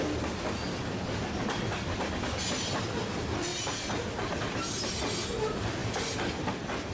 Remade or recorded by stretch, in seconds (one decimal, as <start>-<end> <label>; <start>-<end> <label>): 0.0-6.9 recorded